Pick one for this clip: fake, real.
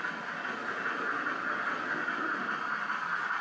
real